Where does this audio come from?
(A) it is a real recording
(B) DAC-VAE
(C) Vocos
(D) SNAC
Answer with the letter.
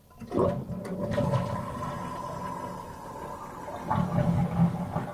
A